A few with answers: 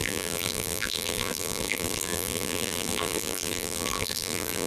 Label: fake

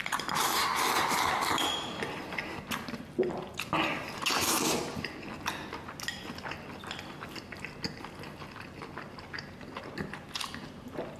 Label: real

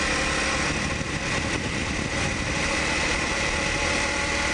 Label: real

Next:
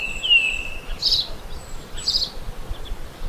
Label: fake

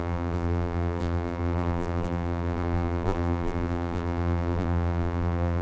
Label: fake